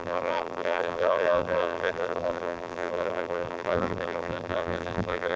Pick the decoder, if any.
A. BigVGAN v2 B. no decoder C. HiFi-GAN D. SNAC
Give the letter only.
A